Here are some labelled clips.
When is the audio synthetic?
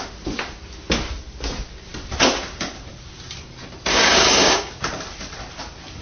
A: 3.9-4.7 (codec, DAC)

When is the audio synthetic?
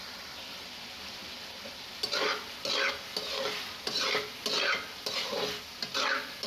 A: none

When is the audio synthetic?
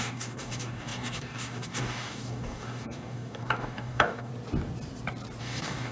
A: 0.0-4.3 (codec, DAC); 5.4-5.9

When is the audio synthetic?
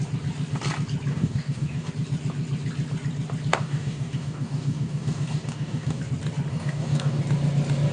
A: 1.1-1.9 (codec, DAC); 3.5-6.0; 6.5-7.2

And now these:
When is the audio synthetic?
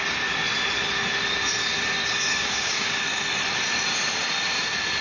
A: 2.3-3.0 (codec, DAC)